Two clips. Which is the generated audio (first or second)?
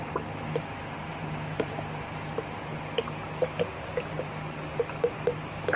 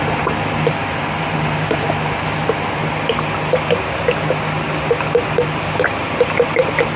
first